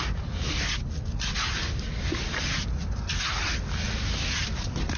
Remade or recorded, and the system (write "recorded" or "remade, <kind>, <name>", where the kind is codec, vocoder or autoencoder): recorded